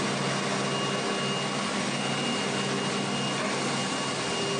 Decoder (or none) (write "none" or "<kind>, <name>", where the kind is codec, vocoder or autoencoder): none